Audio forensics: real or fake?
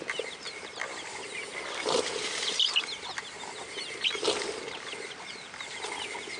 real